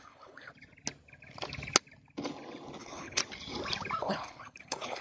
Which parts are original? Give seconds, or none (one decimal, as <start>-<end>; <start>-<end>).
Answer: 0.5-2.8; 3.2-4.0